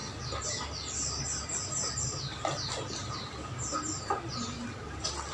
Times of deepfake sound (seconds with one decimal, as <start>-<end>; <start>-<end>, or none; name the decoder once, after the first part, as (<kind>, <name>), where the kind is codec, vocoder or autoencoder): none